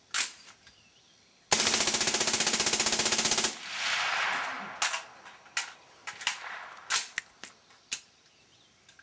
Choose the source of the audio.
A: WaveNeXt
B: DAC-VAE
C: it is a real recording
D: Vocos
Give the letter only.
C